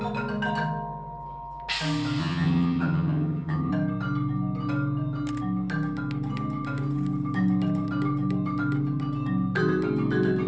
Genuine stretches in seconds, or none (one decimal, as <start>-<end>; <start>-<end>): 0.0-2.2; 3.7-10.5